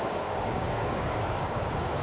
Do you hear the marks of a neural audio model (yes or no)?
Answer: yes